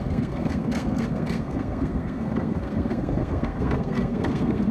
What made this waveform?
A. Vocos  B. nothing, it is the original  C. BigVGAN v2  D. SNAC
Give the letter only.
D